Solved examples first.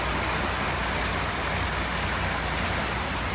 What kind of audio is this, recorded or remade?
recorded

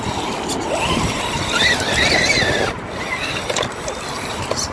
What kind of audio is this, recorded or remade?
recorded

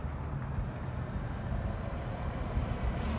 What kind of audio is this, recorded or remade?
recorded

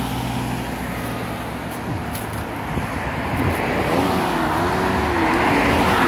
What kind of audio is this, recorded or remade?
recorded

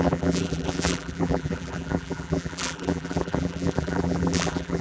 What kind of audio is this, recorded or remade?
remade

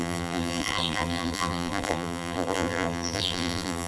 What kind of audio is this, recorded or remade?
remade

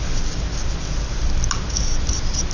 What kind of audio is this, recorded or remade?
recorded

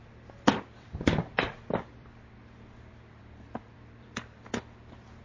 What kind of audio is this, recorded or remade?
remade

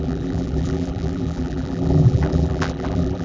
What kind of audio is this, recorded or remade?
remade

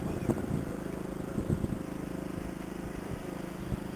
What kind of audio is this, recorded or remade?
recorded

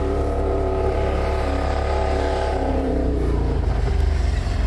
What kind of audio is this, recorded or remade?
remade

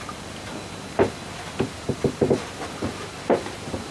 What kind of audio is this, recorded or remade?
recorded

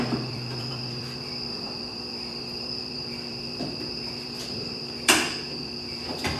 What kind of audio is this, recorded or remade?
remade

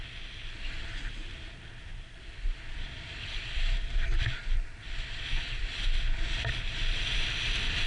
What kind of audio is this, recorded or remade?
recorded